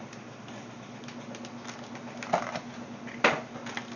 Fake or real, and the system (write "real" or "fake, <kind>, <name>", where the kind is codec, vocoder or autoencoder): real